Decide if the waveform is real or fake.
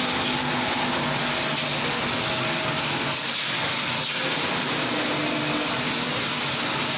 real